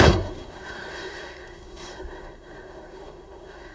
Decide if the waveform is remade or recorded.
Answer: remade